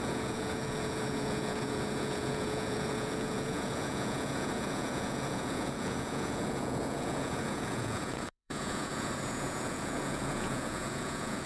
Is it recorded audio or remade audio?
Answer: remade